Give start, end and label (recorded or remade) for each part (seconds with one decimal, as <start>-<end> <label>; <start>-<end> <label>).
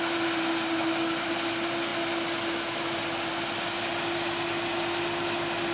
0.0-5.7 recorded